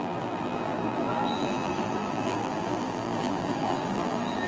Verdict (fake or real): fake